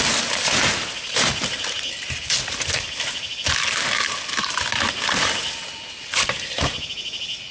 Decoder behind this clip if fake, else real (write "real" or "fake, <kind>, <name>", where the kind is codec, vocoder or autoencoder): real